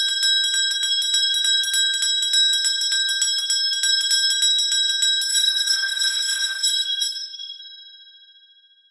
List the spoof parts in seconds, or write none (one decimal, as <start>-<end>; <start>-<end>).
5.3-7.6